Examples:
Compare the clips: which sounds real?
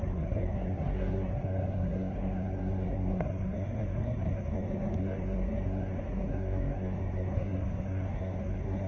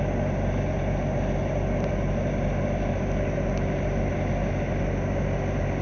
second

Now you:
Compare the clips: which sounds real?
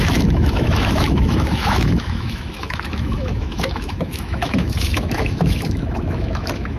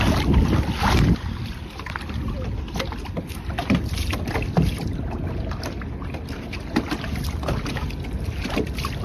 second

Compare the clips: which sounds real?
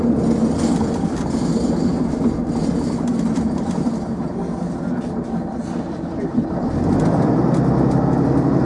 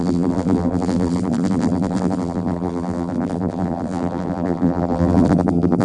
first